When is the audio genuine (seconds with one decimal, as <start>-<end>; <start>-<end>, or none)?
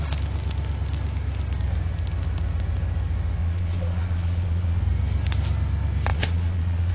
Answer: 0.0-3.4; 4.8-6.1